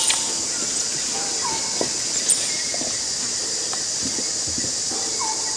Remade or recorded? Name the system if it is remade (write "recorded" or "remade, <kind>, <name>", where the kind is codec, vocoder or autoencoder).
recorded